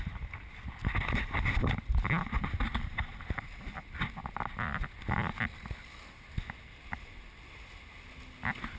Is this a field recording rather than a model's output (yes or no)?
yes